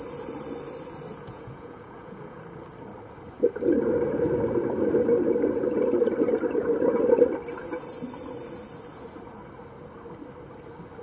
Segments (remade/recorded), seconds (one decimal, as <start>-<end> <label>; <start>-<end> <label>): 0.0-1.1 recorded; 1.1-2.4 remade; 2.4-11.0 recorded